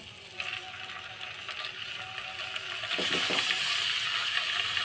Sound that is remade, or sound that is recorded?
recorded